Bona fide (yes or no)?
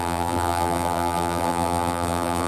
no